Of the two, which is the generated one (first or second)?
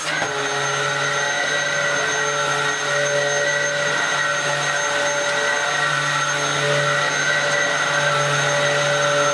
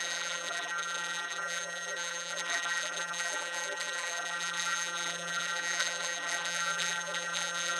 second